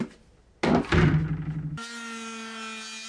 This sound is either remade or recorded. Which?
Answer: recorded